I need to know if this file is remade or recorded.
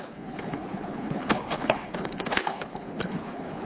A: remade